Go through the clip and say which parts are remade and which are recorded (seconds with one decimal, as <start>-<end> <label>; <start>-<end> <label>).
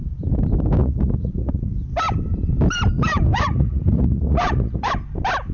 0.0-0.8 recorded; 0.8-1.7 remade; 1.7-3.3 recorded; 3.3-4.9 remade; 4.9-5.5 recorded